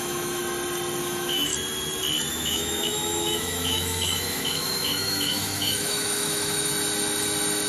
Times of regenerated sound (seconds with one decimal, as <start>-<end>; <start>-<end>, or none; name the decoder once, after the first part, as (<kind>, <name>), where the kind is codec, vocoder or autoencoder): 0.0-0.4 (autoencoder, DAC-VAE); 1.0-1.5; 2.3-6.7